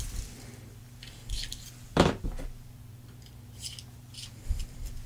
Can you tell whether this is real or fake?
fake